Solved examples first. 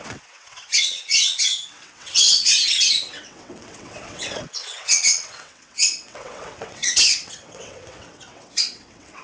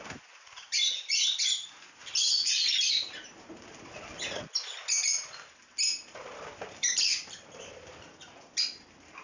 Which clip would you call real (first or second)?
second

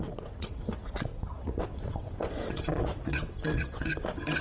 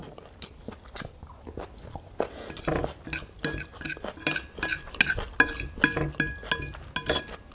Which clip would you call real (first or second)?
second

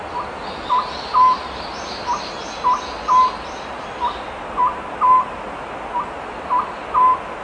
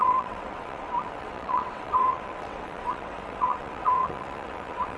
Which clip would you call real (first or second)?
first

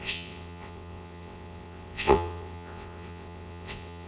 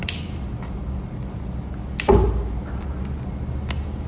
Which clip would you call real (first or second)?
second